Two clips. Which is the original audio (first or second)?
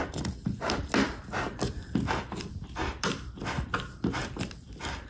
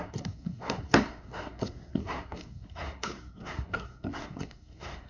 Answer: first